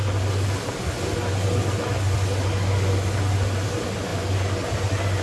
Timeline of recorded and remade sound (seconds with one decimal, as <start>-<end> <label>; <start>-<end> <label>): 0.0-5.2 recorded